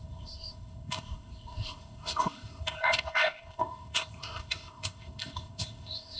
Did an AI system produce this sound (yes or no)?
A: yes